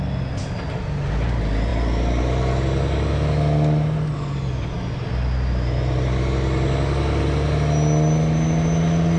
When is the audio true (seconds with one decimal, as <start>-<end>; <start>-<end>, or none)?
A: 0.0-9.2